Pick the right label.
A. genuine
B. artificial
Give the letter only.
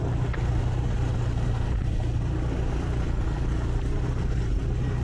A